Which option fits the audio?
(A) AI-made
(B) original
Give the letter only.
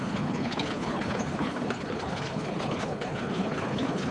A